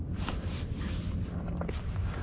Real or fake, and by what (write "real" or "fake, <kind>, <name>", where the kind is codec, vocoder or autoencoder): real